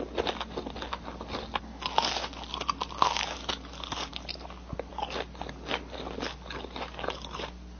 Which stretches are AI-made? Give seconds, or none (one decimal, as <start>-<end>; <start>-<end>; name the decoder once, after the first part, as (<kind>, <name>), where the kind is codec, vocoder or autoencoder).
none